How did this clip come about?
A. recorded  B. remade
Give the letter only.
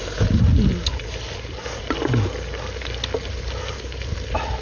A